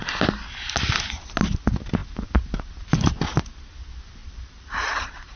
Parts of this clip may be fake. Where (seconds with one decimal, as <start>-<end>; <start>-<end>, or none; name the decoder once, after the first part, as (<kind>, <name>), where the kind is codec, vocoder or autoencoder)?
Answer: 4.2-5.0 (vocoder, BigVGAN v2)